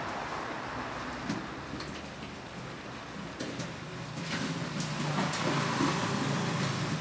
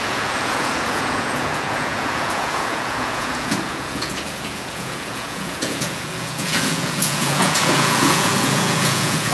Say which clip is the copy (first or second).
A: second